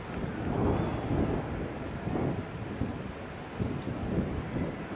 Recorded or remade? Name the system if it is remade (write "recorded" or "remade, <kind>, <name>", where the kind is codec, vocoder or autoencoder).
recorded